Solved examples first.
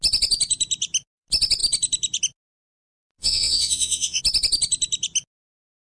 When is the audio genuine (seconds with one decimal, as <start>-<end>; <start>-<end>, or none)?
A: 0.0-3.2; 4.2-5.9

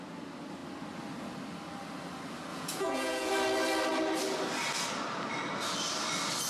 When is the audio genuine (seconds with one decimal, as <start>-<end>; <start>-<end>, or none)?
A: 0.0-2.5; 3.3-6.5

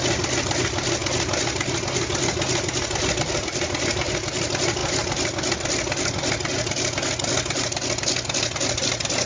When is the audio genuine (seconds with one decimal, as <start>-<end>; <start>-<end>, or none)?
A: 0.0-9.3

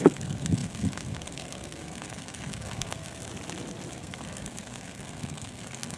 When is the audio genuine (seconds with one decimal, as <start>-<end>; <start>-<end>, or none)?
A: 3.2-3.9

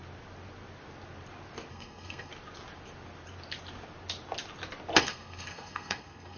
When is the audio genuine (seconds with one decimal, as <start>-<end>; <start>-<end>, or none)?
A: 0.0-1.7; 2.3-5.0

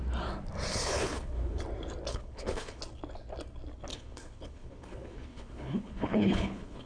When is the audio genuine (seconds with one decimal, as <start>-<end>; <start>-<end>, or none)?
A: 0.0-0.7; 1.6-2.1; 2.8-3.9